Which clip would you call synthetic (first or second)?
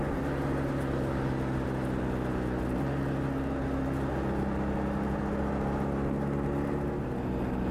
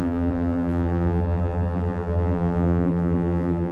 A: second